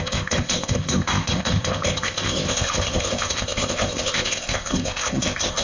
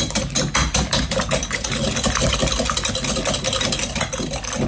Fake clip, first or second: first